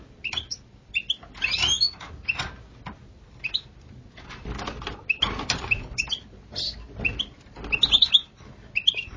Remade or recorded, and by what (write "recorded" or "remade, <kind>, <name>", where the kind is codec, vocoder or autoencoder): recorded